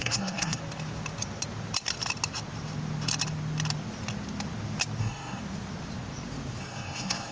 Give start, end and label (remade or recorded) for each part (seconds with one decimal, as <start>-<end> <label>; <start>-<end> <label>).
0.0-0.6 remade; 0.6-5.0 recorded; 5.0-5.4 remade; 5.4-6.6 recorded; 6.6-7.3 remade

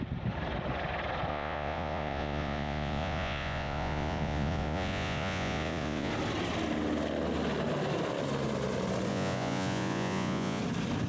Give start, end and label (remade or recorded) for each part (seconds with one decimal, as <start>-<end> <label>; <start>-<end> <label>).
0.0-1.3 recorded; 1.3-6.1 remade; 6.1-9.1 recorded; 9.1-10.6 remade; 10.6-11.1 recorded

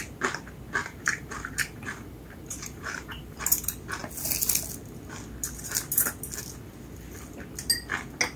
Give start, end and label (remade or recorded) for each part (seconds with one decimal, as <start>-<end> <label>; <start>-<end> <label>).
0.0-0.8 recorded; 0.8-3.4 remade; 3.4-8.4 recorded

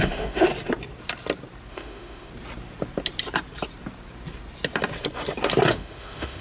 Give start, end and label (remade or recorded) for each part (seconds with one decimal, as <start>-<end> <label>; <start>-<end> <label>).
0.0-0.5 remade; 0.5-1.7 recorded; 1.7-2.3 remade; 2.3-5.7 recorded; 5.7-6.4 remade

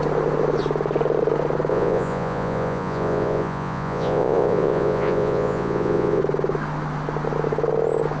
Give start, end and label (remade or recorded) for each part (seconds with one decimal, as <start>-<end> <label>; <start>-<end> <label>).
0.0-1.7 recorded; 1.7-6.2 remade; 6.2-8.2 recorded